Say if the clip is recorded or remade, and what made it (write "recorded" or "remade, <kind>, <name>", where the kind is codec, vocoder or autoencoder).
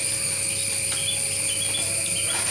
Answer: recorded